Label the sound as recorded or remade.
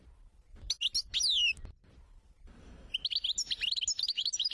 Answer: recorded